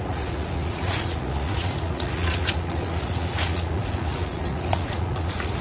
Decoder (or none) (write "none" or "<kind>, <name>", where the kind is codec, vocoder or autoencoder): vocoder, Vocos